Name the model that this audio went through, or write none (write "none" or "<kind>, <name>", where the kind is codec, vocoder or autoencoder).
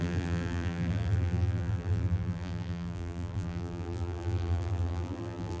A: vocoder, BigVGAN v2